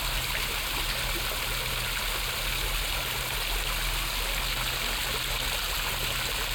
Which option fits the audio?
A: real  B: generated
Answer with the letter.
A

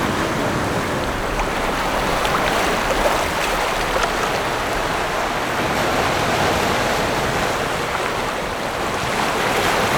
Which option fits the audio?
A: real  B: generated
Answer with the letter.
A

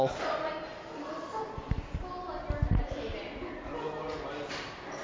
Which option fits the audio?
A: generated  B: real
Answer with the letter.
B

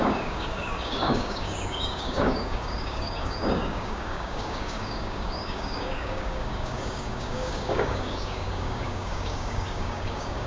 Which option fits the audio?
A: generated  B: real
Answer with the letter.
A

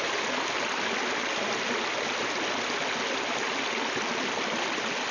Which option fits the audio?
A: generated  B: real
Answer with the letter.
B